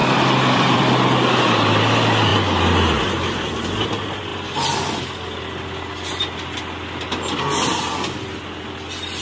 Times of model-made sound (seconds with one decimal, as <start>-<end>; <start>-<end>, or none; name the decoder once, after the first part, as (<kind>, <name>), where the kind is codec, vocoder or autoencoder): 0.0-0.9 (vocoder, BigVGAN v2)